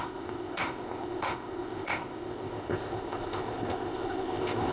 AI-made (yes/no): yes